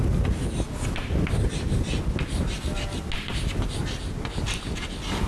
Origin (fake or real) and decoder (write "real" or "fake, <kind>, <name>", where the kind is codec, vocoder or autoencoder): real